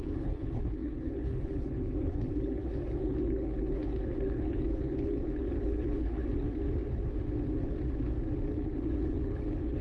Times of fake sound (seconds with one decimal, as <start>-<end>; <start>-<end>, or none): 0.0-6.2; 8.5-9.8